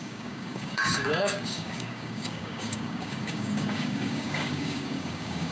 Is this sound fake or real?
fake